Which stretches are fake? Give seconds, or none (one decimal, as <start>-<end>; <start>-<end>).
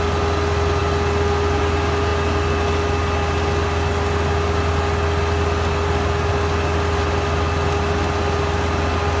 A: none